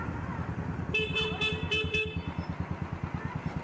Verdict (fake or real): real